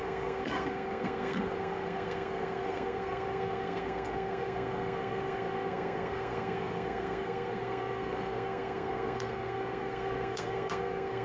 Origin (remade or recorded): remade